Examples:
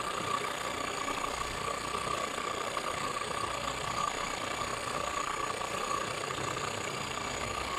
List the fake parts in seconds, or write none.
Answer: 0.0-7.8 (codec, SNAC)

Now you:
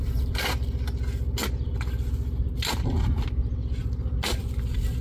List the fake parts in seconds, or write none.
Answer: none

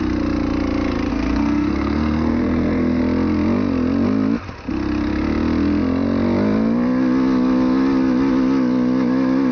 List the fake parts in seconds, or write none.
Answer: 1.1-3.0 (codec, SNAC)

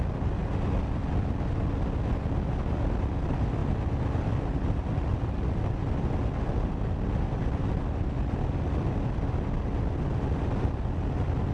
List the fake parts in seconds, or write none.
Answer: none

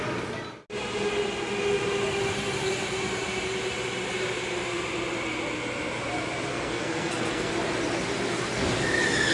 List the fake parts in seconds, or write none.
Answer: 6.5-7.5 (codec, SNAC)